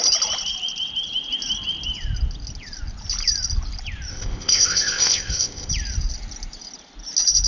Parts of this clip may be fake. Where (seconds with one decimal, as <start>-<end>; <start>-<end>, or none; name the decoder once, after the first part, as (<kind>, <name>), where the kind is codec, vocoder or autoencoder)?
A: 4.1-5.7 (codec, ZipCodec)